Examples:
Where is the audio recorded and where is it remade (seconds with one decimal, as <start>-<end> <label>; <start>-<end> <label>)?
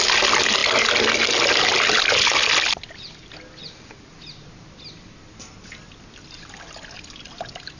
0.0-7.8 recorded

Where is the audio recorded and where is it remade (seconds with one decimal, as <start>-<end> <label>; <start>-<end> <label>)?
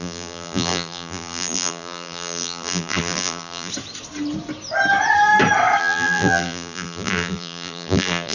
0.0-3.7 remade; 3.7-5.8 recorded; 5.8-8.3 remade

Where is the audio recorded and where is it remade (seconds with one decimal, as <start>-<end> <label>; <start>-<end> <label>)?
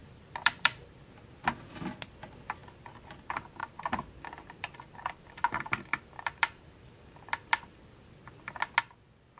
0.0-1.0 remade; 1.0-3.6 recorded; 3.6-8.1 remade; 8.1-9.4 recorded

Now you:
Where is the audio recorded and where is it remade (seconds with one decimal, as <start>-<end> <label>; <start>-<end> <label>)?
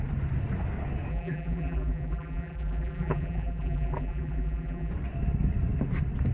0.0-1.1 recorded; 1.1-4.9 remade; 4.9-6.3 recorded